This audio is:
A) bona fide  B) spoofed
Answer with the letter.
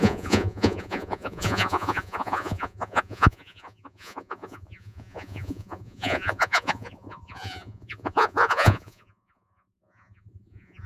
B